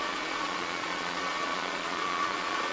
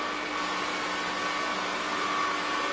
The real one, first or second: second